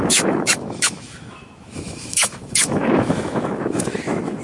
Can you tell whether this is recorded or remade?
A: remade